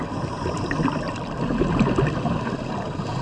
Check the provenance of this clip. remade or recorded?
recorded